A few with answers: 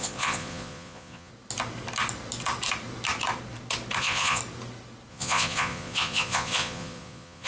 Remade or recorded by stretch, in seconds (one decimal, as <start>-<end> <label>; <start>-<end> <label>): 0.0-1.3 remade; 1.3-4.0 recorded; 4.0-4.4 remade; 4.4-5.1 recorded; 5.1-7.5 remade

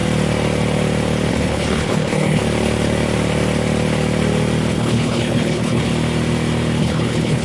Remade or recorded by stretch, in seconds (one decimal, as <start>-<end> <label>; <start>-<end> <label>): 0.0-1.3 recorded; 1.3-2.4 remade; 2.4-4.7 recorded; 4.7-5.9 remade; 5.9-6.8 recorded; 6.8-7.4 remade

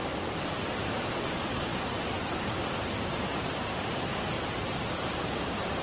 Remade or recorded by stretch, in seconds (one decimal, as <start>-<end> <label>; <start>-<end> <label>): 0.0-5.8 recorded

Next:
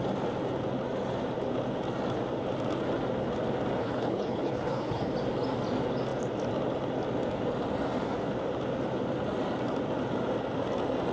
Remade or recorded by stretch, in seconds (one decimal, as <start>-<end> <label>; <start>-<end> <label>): 0.0-3.8 recorded; 3.8-5.1 remade; 5.1-11.1 recorded